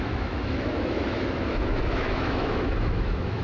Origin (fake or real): fake